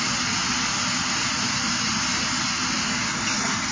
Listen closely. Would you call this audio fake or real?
real